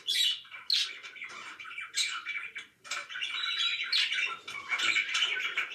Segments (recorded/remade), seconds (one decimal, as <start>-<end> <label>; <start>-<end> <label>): 0.0-5.7 recorded